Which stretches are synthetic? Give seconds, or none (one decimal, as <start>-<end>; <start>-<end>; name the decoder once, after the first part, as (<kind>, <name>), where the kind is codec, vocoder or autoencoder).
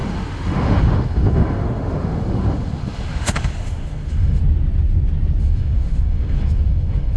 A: 0.0-4.4 (autoencoder, DAC-VAE); 5.4-7.2